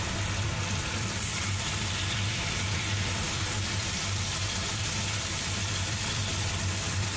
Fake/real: fake